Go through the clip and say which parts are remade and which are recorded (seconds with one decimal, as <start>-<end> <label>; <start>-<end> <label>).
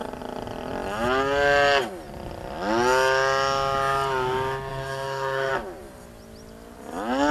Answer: 0.0-4.7 recorded; 4.7-5.5 remade; 5.5-7.3 recorded